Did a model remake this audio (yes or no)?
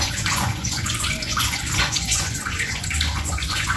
yes